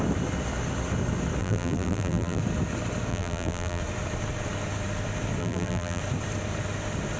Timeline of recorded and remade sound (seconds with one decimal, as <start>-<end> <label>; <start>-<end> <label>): 0.0-1.4 recorded; 1.4-2.4 remade; 2.4-3.1 recorded; 3.1-3.8 remade; 3.8-5.4 recorded; 5.4-6.0 remade; 6.0-7.2 recorded